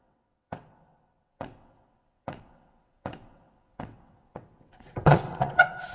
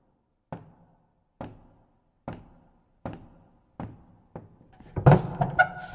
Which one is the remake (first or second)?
first